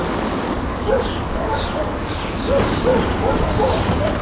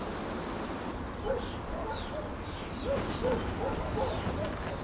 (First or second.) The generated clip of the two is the first